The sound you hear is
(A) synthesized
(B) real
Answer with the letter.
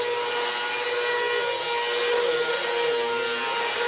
B